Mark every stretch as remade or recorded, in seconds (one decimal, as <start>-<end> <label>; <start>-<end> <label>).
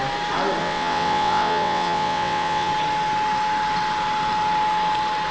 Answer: 0.0-0.6 recorded; 0.6-2.7 remade; 2.7-5.3 recorded